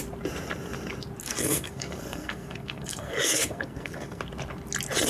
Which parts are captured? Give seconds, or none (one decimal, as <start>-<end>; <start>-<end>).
0.0-1.2; 4.2-5.1